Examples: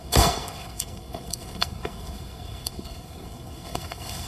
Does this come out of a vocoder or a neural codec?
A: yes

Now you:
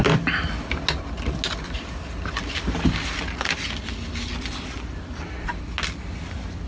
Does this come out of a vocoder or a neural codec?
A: no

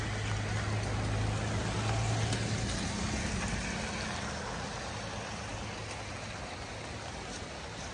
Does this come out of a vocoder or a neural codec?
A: no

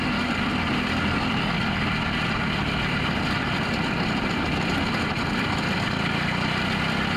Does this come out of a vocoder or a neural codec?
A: no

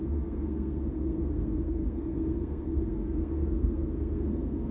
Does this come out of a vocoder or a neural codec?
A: yes